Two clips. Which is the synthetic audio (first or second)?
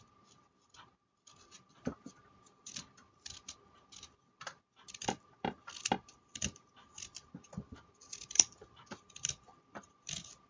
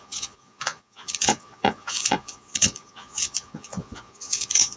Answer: second